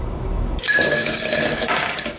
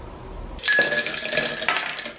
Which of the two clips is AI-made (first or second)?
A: first